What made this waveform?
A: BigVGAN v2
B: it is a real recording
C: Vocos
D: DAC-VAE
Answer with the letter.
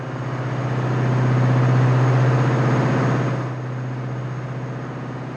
B